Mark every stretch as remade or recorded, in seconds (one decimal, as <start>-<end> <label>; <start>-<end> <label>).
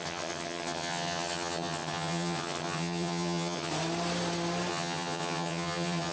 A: 0.0-3.7 remade; 3.7-4.7 recorded; 4.7-6.1 remade